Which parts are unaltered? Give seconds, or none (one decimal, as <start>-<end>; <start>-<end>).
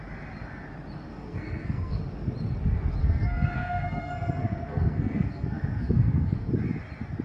0.0-1.1; 2.0-3.0; 6.5-7.2